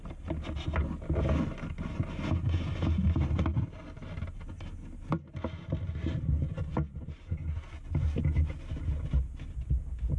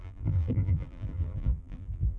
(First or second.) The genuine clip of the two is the first